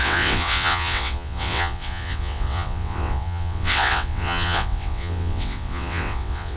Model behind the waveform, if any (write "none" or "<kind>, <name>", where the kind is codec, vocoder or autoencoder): vocoder, WaveNeXt